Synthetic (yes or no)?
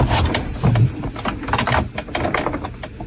no